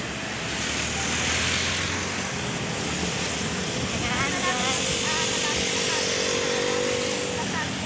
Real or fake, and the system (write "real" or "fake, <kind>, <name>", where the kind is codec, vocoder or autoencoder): real